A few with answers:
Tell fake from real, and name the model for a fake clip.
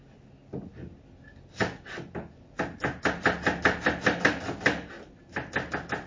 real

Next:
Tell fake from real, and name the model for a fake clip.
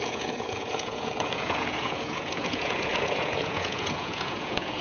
fake, vocoder, Vocos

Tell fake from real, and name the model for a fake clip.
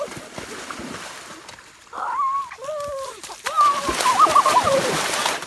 real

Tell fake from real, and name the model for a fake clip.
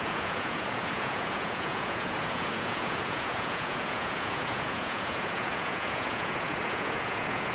fake, vocoder, Vocos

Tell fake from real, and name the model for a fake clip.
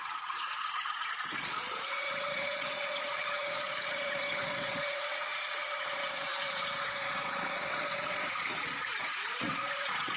fake, vocoder, Vocos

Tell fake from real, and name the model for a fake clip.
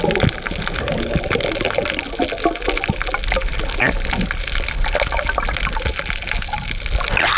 real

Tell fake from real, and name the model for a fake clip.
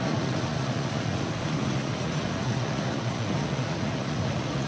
fake, vocoder, Vocos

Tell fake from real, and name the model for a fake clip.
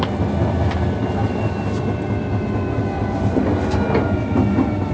real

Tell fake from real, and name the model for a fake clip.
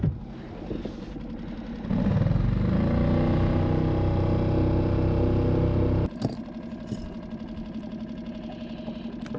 real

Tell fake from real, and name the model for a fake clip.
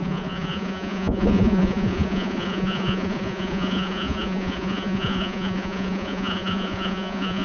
fake, vocoder, Vocos